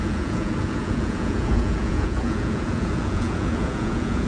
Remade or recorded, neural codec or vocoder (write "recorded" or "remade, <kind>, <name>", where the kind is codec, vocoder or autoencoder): remade, vocoder, Vocos